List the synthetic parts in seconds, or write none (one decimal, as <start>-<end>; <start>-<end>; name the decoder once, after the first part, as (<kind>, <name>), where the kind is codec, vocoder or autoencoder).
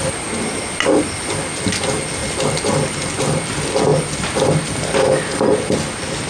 2.2-3.0 (vocoder, BigVGAN v2)